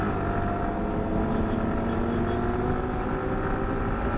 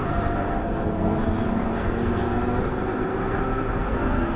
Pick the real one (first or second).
first